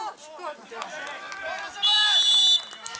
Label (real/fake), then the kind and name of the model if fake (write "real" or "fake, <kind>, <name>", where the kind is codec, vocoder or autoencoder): real